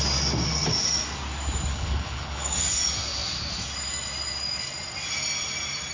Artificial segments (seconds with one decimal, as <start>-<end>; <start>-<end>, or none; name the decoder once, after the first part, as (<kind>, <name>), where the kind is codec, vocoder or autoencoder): 1.7-2.6 (codec, HILCodec)